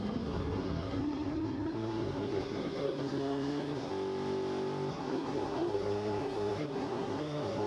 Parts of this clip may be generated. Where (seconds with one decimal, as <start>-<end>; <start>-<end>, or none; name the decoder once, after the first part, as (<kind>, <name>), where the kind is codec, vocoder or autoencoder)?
0.0-3.9 (codec, SNAC); 4.9-7.7